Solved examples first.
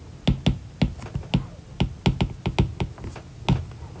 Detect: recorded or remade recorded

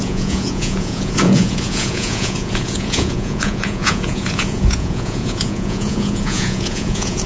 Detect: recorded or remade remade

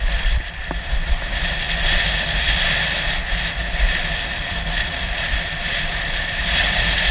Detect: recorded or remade remade